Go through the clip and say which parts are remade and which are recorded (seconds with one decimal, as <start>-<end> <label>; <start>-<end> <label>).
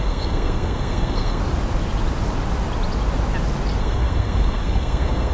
0.0-1.4 remade; 1.4-3.8 recorded; 3.8-5.3 remade